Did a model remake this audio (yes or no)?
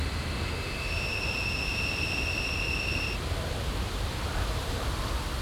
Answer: no